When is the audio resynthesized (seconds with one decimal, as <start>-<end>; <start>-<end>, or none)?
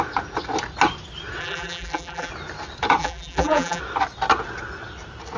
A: 1.4-2.3; 3.0-3.8